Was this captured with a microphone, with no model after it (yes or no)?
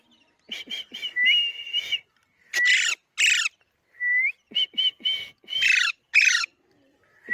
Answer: yes